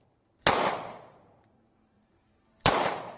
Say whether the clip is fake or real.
fake